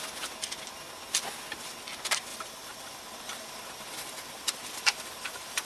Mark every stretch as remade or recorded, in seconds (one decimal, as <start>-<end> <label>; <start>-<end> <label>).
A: 0.0-2.3 recorded; 2.3-5.7 remade

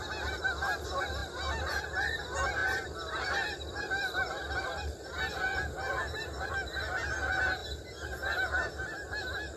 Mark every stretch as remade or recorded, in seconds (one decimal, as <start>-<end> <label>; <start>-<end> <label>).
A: 0.0-2.6 recorded; 2.6-6.5 remade; 6.5-9.6 recorded

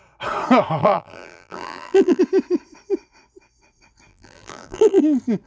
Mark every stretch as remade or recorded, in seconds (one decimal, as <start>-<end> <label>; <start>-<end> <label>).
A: 0.0-0.8 recorded; 0.8-2.2 remade; 2.2-4.1 recorded; 4.1-5.0 remade; 5.0-5.5 recorded

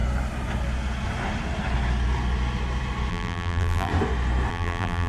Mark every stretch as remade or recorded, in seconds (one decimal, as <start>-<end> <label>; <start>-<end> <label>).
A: 0.0-3.1 recorded; 3.1-3.9 remade; 3.9-4.5 recorded; 4.5-5.1 remade

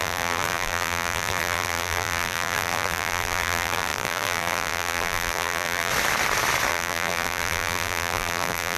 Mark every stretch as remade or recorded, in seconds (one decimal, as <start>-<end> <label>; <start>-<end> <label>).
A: 0.0-5.9 remade; 5.9-6.7 recorded; 6.7-8.8 remade

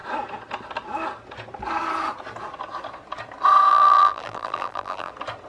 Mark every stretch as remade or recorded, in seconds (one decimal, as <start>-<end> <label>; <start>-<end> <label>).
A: 0.0-3.7 recorded; 3.7-5.1 remade; 5.1-5.5 recorded

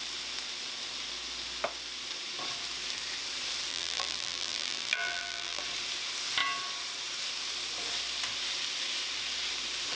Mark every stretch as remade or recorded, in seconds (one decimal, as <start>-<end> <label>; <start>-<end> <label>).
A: 0.0-3.7 recorded; 3.7-5.6 remade; 5.6-10.0 recorded